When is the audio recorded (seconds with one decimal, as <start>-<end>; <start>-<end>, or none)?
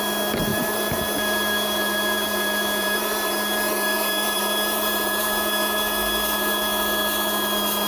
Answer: 0.0-0.5; 5.2-7.9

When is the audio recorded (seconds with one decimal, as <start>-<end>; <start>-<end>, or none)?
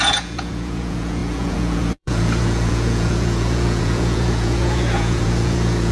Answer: none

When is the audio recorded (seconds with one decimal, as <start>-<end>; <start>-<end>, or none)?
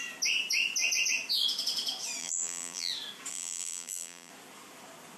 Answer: 0.0-2.2; 2.9-3.3; 4.3-5.2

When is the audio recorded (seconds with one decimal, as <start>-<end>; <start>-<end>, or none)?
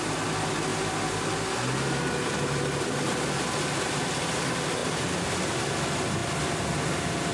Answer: 0.0-4.8; 5.4-7.3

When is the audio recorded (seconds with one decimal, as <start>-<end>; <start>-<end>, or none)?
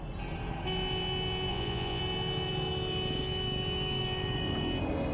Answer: 0.0-1.5; 2.0-5.1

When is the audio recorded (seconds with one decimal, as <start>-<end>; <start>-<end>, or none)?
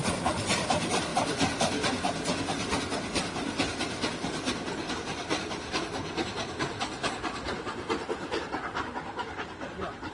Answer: 0.0-10.1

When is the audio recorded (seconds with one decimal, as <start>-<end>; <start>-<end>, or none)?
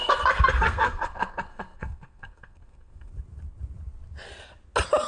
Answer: 3.1-5.1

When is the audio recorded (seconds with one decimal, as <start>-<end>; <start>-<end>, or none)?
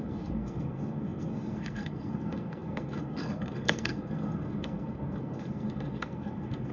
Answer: none